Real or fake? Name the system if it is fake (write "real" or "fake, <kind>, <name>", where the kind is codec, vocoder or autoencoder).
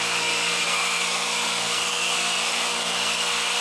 fake, codec, SNAC